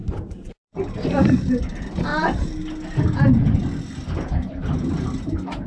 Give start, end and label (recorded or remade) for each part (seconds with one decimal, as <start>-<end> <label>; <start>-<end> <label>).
0.0-0.9 remade; 0.9-2.1 recorded; 2.1-2.6 remade; 2.6-5.7 recorded